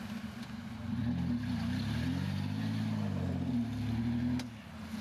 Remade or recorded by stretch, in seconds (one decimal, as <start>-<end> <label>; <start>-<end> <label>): 0.0-5.0 recorded